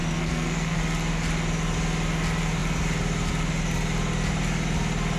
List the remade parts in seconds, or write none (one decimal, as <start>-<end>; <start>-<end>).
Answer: 0.0-0.8